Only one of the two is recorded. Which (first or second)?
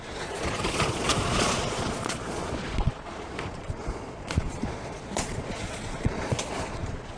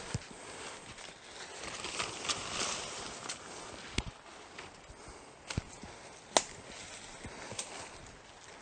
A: second